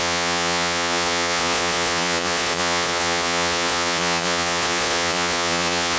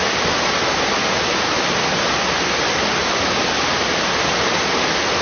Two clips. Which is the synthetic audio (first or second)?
first